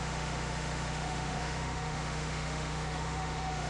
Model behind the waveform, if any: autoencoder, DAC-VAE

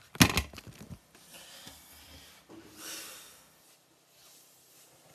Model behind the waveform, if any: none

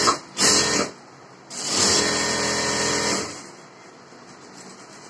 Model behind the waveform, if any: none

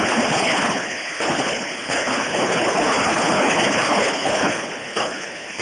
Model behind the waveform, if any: codec, HILCodec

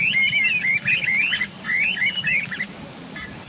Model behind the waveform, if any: none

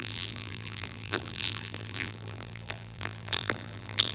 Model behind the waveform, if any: vocoder, BigVGAN v2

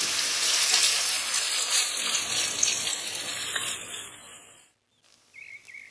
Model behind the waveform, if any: none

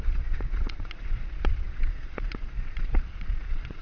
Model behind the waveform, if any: vocoder, Vocos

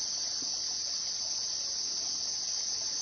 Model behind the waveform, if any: none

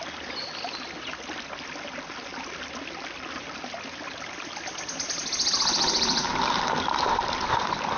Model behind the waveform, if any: none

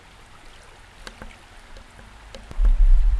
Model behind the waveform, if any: none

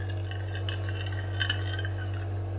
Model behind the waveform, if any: none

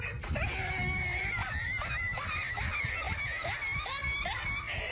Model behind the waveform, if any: none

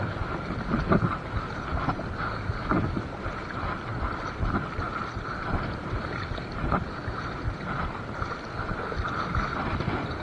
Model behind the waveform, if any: none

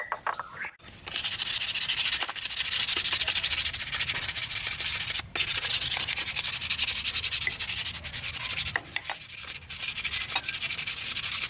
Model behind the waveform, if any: none